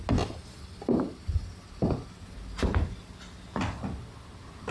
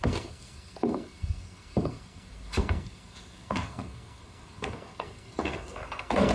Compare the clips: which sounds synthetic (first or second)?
second